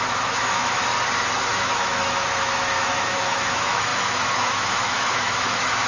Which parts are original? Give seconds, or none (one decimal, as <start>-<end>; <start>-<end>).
0.9-1.5